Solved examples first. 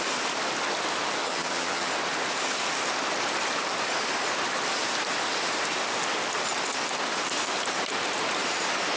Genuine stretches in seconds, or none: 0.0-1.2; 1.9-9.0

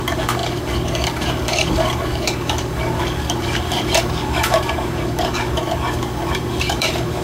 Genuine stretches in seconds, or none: none

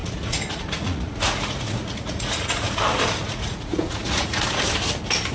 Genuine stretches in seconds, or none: 2.8-3.2; 4.6-5.3